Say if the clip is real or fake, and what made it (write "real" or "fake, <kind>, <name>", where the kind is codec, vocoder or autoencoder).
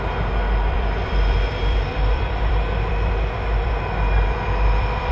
fake, vocoder, BigVGAN v2